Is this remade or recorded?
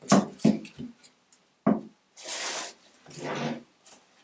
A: recorded